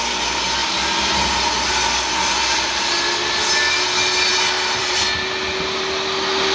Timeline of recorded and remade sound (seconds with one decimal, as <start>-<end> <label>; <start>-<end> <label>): 0.0-4.3 recorded; 4.3-5.0 remade; 5.0-6.5 recorded